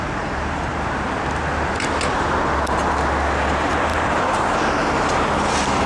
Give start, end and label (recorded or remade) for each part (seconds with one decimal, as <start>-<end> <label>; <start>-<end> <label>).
0.0-0.7 recorded; 0.7-1.7 remade; 1.7-3.9 recorded; 3.9-4.6 remade; 4.6-5.9 recorded